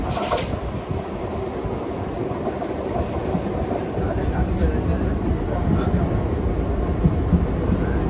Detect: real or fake real